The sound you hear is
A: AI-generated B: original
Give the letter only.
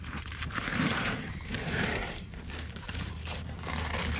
A